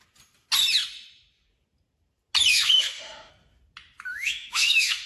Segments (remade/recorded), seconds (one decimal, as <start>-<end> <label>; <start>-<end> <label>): 0.0-2.5 recorded; 2.5-3.3 remade; 3.3-4.1 recorded; 4.1-5.1 remade